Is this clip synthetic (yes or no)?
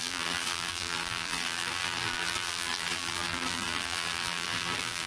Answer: yes